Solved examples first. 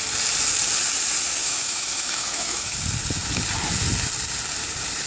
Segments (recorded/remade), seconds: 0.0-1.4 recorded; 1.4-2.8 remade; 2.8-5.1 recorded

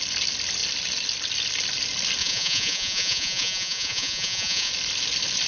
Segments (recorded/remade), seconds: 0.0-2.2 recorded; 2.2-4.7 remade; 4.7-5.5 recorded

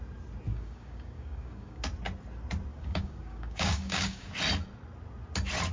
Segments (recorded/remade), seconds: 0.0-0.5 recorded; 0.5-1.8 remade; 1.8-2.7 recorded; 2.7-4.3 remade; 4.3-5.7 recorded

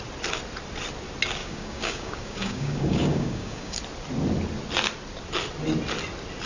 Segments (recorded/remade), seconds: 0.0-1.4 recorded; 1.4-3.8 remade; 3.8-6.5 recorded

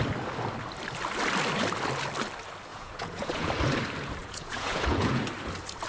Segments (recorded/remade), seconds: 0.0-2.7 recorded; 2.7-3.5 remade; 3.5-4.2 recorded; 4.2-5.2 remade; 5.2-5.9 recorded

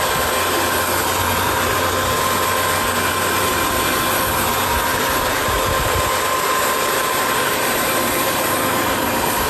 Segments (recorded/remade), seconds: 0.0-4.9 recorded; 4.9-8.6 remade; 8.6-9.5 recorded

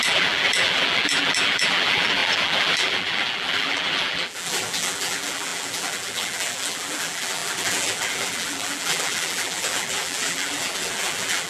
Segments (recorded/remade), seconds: 0.0-11.5 remade